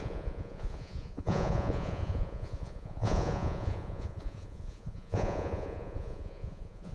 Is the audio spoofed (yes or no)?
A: yes